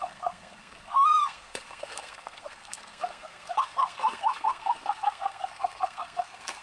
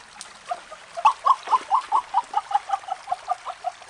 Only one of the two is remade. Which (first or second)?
first